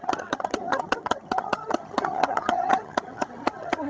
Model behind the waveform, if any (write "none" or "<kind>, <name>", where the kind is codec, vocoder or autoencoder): vocoder, HiFi-GAN